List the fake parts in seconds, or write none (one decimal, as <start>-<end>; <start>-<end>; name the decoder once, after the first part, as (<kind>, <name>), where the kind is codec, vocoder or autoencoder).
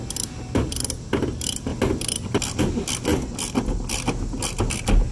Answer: none